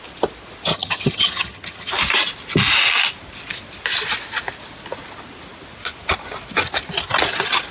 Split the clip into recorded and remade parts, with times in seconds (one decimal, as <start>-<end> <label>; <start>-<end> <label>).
0.0-0.7 recorded; 0.7-1.9 remade; 1.9-7.7 recorded